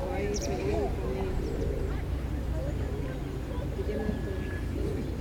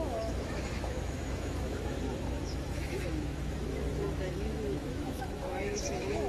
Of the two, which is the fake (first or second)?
second